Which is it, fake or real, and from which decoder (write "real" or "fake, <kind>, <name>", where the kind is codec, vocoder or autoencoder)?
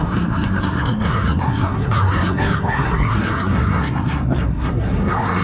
fake, codec, SNAC